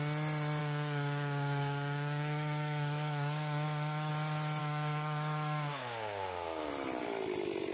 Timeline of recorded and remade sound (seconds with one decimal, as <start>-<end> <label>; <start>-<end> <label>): 0.0-0.6 recorded; 0.6-4.1 remade; 4.1-4.6 recorded; 4.6-6.7 remade; 6.7-7.7 recorded